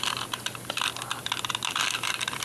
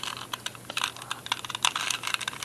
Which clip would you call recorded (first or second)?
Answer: second